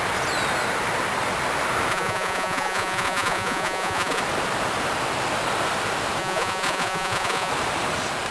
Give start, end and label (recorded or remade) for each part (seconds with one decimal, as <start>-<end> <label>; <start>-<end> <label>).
0.0-1.9 recorded; 1.9-4.2 remade; 4.2-6.2 recorded; 6.2-7.5 remade; 7.5-8.3 recorded